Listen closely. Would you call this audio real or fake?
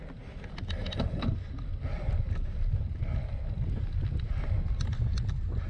real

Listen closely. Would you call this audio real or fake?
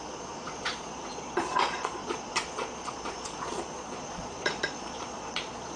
fake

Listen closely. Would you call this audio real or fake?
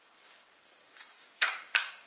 fake